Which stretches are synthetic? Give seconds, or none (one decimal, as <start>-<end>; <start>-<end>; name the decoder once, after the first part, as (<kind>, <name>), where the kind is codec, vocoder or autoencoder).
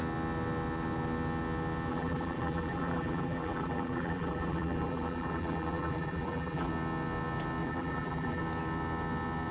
1.9-6.7 (vocoder, BigVGAN v2); 7.6-8.4